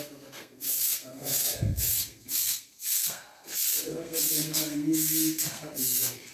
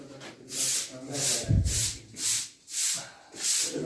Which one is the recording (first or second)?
second